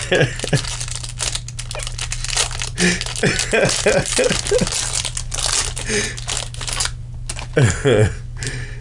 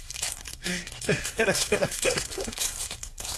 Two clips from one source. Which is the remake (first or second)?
second